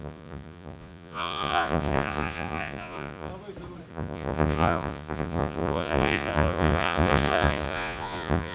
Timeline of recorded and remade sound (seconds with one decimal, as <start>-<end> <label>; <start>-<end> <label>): 0.0-3.3 remade; 3.3-3.9 recorded; 3.9-8.5 remade